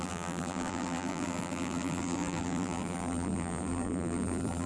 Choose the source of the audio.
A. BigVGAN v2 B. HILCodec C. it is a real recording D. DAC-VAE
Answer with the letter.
A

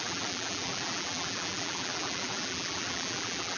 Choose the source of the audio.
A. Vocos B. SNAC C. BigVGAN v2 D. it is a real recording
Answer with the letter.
C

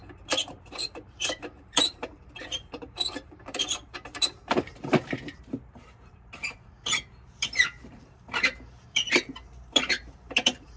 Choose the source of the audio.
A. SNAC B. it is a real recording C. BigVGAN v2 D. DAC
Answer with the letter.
C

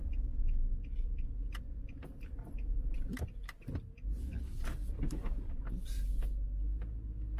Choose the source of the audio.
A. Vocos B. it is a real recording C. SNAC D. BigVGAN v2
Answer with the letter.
B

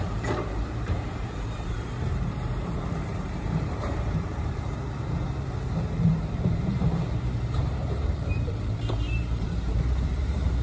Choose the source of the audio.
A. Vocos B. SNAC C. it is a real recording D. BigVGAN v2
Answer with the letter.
D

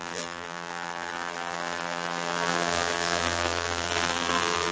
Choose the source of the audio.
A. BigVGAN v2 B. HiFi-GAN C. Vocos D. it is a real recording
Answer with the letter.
A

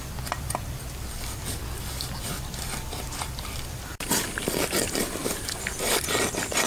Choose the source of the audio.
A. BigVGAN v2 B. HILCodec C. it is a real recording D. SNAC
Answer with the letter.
A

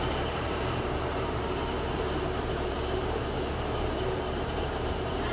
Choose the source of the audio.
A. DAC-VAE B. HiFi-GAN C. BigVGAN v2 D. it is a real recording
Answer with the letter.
C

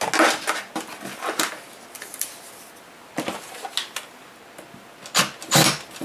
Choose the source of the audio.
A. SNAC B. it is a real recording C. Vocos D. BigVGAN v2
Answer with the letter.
B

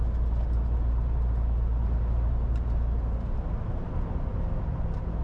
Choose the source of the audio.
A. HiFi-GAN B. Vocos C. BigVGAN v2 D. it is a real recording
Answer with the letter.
D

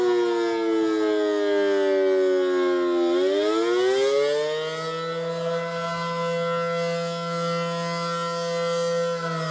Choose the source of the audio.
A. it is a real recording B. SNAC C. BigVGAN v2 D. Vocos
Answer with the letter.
A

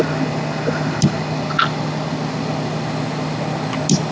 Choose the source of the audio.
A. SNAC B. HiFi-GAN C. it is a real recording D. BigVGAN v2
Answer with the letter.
C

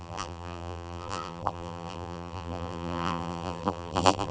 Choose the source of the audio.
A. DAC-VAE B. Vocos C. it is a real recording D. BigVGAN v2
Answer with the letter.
D